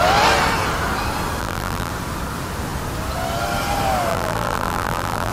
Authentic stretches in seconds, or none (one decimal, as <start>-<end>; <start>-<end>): 0.0-1.4; 1.9-4.1